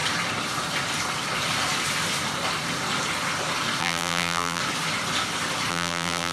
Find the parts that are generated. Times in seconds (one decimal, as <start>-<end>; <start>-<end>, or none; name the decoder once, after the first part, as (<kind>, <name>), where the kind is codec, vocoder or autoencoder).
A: 3.8-4.6 (vocoder, BigVGAN v2); 5.7-6.3